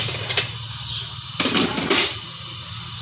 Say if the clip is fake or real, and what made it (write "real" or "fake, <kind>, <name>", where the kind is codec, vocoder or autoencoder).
real